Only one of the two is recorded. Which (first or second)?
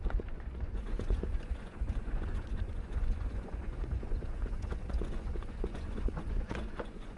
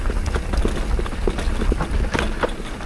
second